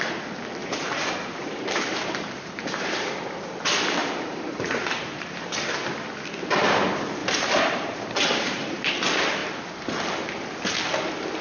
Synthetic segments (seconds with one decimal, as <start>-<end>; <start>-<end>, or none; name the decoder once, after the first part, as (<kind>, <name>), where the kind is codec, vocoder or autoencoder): 0.6-3.2 (vocoder, BigVGAN v2); 4.0-6.1; 7.2-8.9

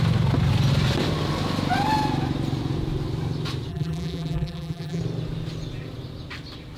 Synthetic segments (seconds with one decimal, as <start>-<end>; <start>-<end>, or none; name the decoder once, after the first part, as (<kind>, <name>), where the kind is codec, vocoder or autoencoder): 3.7-5.0 (vocoder, BigVGAN v2)

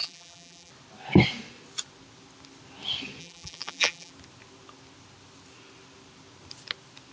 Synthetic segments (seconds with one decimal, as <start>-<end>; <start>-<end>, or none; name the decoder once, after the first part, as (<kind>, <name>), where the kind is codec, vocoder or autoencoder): 0.0-0.7 (vocoder, BigVGAN v2); 3.2-4.1

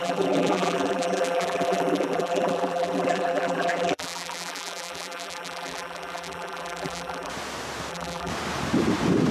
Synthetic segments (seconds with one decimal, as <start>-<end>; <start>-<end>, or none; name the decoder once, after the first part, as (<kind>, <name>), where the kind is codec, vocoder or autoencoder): 0.0-7.3 (vocoder, BigVGAN v2); 7.9-8.3